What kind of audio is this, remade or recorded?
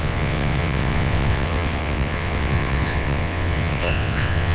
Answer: remade